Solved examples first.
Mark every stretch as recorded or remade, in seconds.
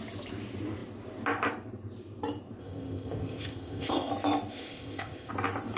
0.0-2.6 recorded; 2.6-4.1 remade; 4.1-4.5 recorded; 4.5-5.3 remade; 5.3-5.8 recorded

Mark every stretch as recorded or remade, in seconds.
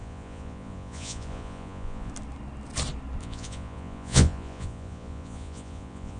0.0-2.1 remade; 2.1-3.2 recorded; 3.2-6.2 remade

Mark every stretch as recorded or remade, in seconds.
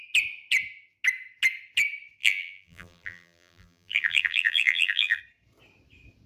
0.0-2.2 recorded; 2.2-5.2 remade; 5.2-6.3 recorded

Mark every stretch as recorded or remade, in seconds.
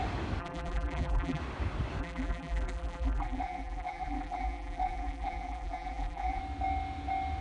0.0-0.4 recorded; 0.4-1.4 remade; 1.4-2.0 recorded; 2.0-6.4 remade; 6.4-7.4 recorded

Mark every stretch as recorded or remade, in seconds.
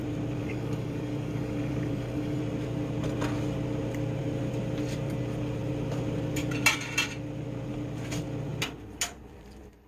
0.0-0.4 recorded; 0.4-2.4 remade; 2.4-9.9 recorded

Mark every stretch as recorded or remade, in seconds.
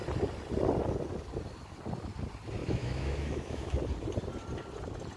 0.0-2.6 recorded; 2.6-3.8 remade; 3.8-5.2 recorded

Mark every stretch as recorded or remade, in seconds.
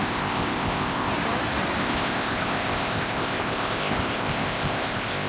0.0-1.1 remade; 1.1-1.8 recorded; 1.8-5.3 remade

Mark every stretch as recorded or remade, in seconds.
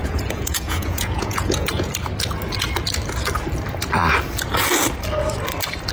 0.0-1.9 remade; 1.9-5.9 recorded